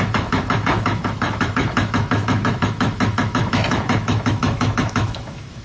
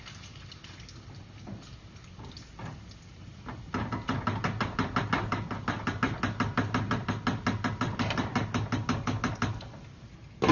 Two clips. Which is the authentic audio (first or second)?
second